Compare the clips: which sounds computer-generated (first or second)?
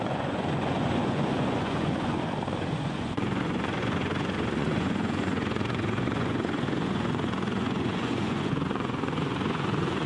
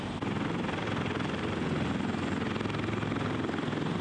first